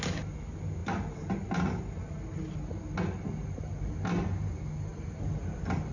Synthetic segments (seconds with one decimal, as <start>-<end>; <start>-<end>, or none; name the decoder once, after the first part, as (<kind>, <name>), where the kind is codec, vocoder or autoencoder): none